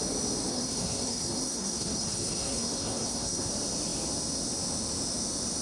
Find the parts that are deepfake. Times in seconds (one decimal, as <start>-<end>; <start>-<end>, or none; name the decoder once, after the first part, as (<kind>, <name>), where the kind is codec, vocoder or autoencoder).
0.5-3.5 (codec, SNAC)